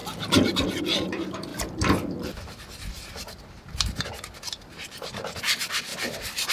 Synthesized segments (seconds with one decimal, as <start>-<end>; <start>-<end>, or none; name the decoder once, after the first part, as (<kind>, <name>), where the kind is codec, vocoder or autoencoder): 5.9-6.5 (vocoder, BigVGAN v2)